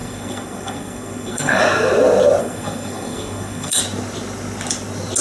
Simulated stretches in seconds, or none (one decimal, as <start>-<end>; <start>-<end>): 0.0-1.6; 2.4-3.8

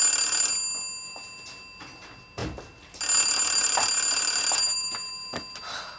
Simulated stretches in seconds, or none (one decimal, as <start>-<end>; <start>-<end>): none

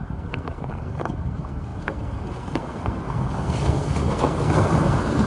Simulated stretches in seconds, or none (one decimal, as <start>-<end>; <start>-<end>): 0.0-5.3

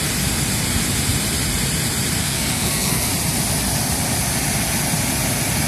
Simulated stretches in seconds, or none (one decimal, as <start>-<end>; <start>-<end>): 2.2-3.1

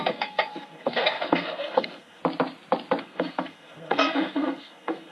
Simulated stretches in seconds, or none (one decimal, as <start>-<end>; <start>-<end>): 0.0-2.2; 3.0-5.1

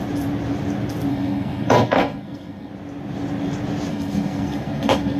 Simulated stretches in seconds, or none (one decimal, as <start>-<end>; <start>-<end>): 1.1-2.7; 3.9-5.2

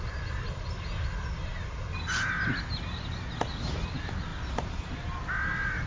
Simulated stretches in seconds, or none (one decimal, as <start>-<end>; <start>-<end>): none